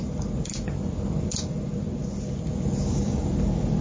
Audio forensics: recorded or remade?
recorded